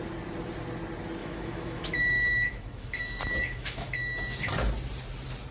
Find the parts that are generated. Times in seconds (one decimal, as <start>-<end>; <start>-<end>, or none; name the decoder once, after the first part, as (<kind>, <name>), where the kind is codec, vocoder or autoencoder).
1.2-4.5 (autoencoder, DAC-VAE)